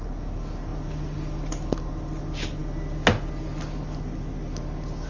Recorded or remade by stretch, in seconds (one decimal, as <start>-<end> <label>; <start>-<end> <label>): 0.0-5.1 recorded